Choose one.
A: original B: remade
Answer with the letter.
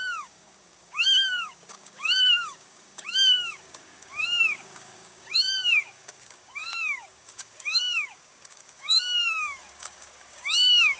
B